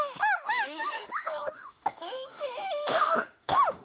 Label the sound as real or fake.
fake